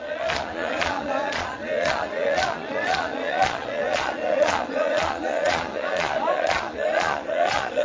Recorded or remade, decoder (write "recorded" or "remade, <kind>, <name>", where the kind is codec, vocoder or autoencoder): remade, vocoder, Vocos